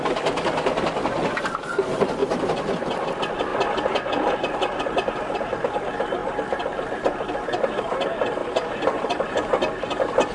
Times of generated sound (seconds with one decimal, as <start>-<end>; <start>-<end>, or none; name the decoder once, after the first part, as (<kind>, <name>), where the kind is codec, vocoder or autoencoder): 3.5-4.3 (vocoder, BigVGAN v2); 8.4-9.6